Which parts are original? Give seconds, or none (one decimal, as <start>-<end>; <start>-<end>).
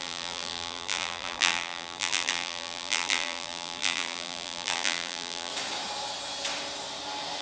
5.5-7.4